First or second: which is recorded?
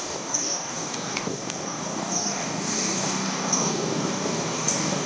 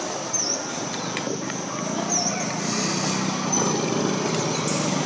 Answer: second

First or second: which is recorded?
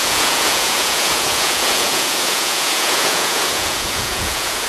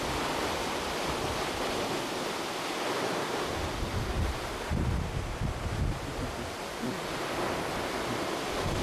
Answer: second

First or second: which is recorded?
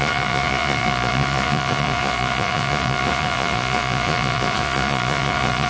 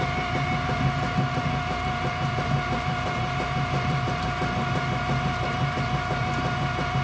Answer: second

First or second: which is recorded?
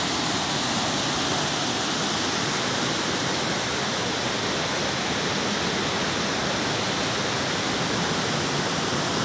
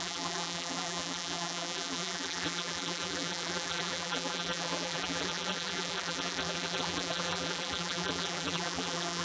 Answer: first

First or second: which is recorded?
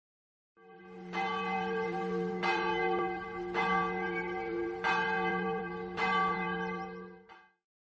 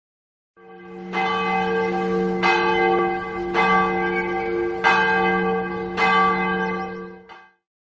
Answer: second